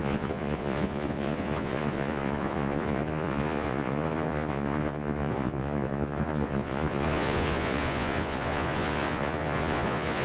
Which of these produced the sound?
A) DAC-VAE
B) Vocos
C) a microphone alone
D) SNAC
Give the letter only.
B